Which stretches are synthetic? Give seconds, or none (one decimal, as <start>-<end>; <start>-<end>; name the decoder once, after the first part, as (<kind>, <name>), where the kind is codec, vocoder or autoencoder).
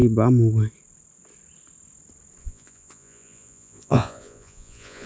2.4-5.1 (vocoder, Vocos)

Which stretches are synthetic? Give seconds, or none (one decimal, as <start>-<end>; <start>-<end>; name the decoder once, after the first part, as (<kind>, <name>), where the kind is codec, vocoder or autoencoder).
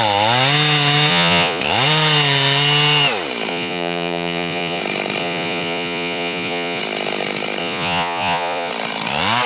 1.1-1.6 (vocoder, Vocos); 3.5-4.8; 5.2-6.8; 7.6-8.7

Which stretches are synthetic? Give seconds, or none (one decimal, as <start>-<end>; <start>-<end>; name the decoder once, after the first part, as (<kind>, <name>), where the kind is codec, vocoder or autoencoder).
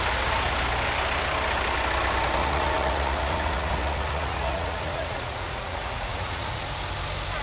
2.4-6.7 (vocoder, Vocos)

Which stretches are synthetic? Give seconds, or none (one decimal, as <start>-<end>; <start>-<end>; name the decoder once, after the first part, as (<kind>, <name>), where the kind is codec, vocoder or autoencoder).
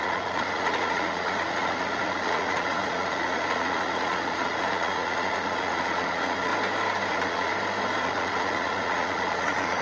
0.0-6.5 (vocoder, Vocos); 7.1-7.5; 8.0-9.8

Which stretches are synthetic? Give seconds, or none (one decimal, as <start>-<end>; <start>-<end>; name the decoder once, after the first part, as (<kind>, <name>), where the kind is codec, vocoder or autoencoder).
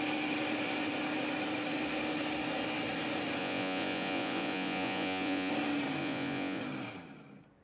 3.4-5.5 (vocoder, Vocos); 6.0-6.6